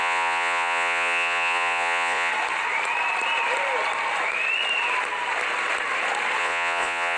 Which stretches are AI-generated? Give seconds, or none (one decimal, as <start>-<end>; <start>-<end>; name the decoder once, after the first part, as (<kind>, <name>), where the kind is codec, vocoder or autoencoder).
0.0-2.3 (vocoder, Vocos); 6.4-7.2